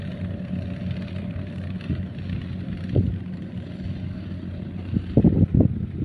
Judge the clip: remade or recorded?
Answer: recorded